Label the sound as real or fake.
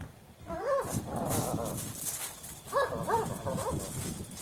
real